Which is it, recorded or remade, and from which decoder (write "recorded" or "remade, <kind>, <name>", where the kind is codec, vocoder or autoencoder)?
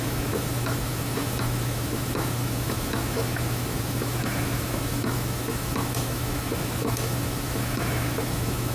remade, autoencoder, DAC-VAE